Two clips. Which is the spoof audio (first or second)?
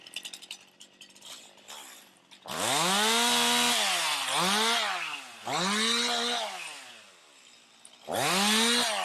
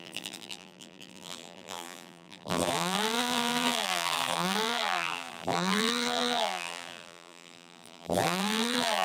second